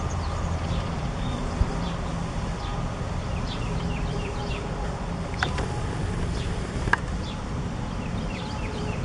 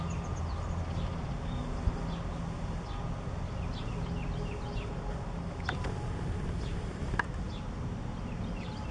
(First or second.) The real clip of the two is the second